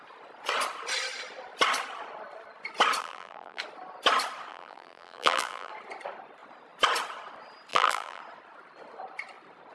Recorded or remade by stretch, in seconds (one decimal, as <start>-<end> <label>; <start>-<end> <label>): 0.0-3.0 recorded; 3.0-3.6 remade; 3.6-4.5 recorded; 4.5-5.7 remade; 5.7-7.7 recorded; 7.7-8.2 remade; 8.2-9.7 recorded